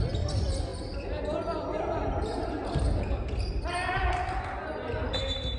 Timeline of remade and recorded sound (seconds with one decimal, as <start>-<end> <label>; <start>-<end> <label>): 0.0-5.6 recorded